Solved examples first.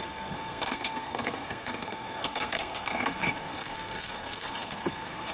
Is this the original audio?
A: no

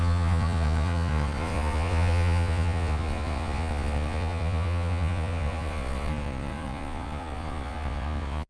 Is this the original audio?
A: no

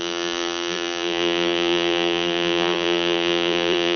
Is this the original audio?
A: no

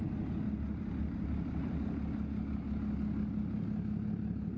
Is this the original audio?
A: yes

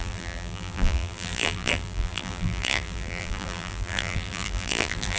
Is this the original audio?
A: no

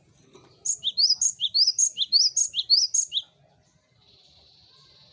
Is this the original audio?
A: yes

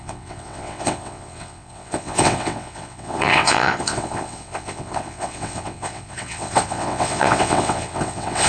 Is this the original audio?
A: no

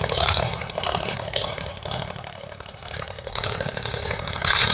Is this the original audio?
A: no